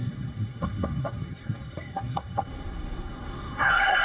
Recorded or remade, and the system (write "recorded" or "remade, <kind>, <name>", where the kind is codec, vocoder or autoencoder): remade, codec, SNAC